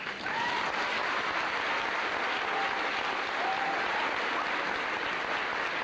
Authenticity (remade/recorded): recorded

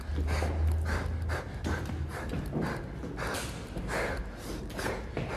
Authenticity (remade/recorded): recorded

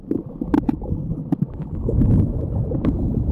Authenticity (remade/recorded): recorded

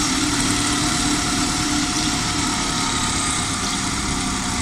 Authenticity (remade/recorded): remade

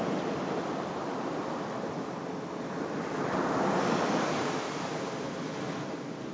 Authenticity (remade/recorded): recorded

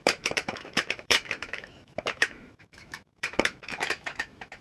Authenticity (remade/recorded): remade